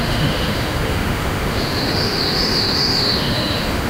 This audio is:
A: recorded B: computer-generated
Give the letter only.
B